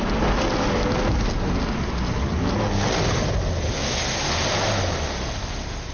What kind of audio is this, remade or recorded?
recorded